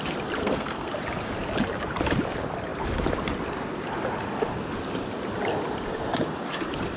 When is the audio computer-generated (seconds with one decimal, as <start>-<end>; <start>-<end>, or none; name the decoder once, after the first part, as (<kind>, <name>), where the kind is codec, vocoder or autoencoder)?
0.4-0.9 (codec, SNAC)